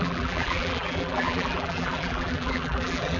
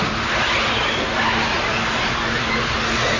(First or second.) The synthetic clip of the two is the first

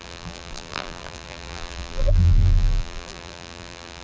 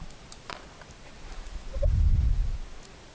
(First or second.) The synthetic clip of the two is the first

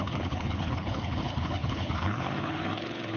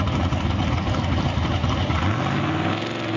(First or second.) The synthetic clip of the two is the first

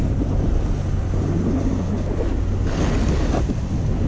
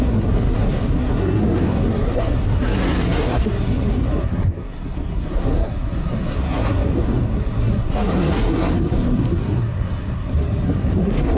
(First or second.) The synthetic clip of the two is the second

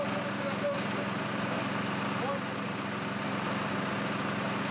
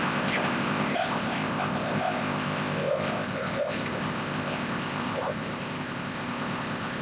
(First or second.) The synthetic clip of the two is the second